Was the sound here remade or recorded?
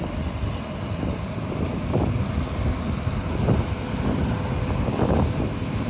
recorded